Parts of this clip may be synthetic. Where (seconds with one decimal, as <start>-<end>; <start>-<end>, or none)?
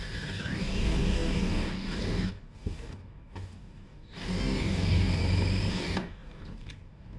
0.0-5.2; 5.7-7.2